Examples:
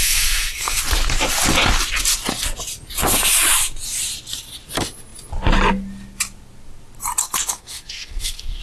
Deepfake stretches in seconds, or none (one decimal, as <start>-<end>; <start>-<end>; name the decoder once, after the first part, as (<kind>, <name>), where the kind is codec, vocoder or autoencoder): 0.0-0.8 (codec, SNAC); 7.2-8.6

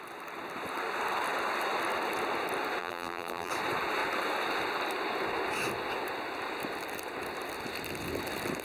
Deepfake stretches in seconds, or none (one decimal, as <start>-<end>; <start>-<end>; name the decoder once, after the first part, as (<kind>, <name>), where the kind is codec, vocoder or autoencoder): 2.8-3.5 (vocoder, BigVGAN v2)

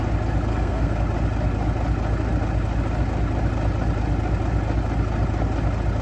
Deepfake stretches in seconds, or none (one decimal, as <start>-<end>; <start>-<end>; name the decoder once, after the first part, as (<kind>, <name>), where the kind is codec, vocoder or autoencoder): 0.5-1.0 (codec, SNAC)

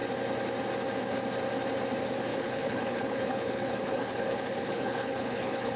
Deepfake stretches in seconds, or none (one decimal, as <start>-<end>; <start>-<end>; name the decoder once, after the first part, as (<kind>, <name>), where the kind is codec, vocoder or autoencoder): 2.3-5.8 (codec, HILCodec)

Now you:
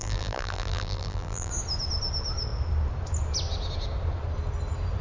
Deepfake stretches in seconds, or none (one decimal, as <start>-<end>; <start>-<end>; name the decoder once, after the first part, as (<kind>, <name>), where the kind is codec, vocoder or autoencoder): 0.0-1.5 (vocoder, BigVGAN v2)

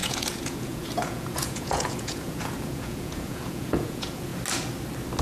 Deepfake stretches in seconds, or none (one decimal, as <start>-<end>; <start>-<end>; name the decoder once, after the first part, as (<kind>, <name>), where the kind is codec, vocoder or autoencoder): 0.0-4.3 (vocoder, Vocos)

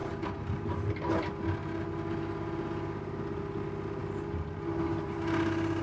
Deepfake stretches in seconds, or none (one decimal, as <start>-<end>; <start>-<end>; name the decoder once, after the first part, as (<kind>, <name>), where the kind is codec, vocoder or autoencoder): 4.0-5.0 (vocoder, BigVGAN v2)

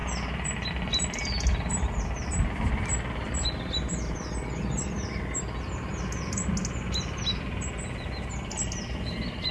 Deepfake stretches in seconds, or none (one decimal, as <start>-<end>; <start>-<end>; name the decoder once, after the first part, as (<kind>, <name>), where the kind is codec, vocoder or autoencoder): none